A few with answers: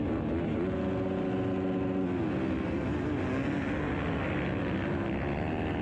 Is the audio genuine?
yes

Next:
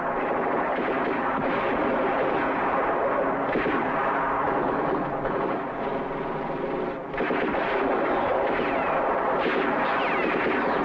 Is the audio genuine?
yes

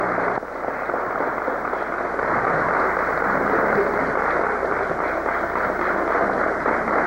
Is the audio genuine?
yes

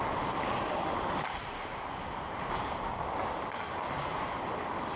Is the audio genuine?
yes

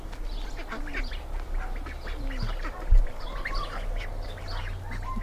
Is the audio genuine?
yes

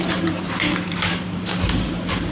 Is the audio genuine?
no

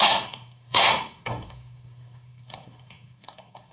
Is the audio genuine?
no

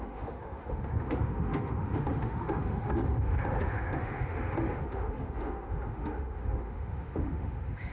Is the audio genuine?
no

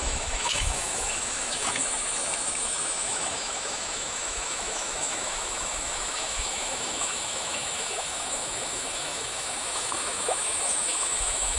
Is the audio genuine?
no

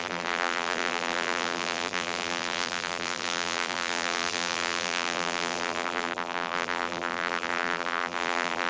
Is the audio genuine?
no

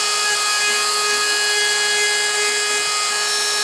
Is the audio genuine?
yes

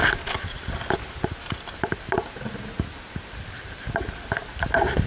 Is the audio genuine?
no